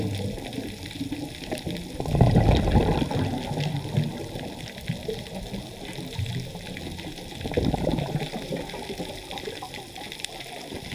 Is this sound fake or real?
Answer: real